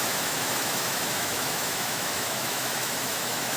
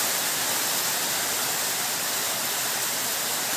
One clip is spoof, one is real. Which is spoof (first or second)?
first